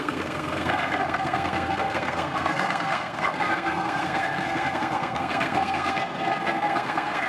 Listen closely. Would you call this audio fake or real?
fake